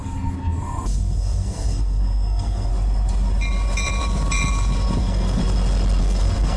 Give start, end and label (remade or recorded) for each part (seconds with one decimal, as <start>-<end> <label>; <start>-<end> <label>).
0.0-2.7 remade; 2.7-5.0 recorded; 5.0-5.4 remade; 5.4-6.0 recorded; 6.0-6.6 remade